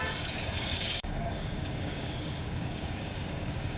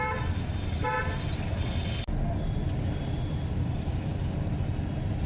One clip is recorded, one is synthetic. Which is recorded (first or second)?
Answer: second